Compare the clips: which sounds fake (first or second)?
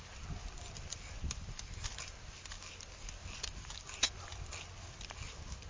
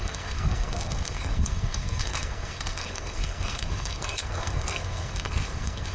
second